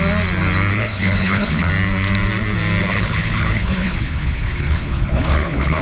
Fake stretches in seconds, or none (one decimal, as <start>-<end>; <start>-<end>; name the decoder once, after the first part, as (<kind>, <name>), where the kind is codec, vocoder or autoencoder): 0.7-1.7 (codec, HILCodec); 2.8-5.8